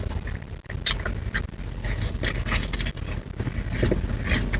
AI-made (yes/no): no